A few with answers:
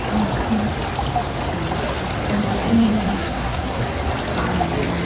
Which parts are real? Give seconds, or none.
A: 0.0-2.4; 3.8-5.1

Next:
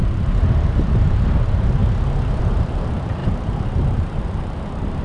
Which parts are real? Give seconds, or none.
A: 1.8-2.4

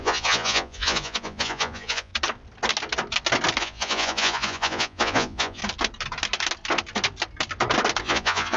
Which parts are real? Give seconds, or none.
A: 2.1-3.6; 5.6-8.0

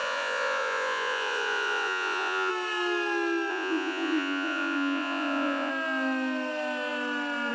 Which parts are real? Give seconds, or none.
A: 2.5-3.5; 5.7-7.5

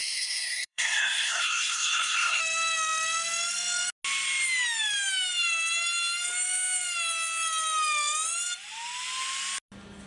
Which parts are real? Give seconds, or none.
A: 2.4-10.1

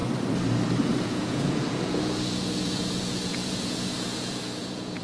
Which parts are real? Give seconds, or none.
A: 0.0-1.0

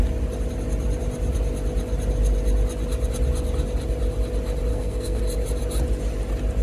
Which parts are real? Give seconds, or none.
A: 0.0-4.7; 5.2-6.6

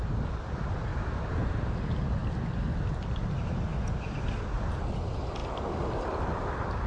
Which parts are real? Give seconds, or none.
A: 0.0-2.2; 3.3-3.7; 4.3-6.9